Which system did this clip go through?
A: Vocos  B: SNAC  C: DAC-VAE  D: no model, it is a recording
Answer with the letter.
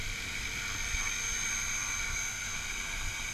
D